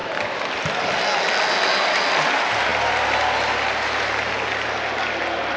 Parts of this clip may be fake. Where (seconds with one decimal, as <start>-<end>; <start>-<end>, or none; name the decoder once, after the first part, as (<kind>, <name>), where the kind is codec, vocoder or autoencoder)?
none